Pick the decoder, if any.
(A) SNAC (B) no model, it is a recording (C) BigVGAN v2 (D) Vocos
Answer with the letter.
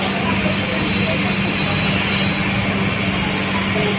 B